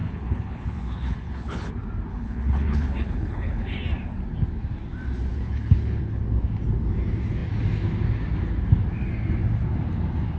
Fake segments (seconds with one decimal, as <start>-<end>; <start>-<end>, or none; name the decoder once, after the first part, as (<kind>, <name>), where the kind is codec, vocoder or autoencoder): 0.0-1.7 (codec, HILCodec); 2.1-3.8; 5.3-6.2